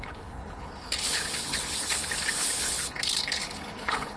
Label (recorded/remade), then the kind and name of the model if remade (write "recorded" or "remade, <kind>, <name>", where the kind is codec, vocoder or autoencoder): remade, codec, HILCodec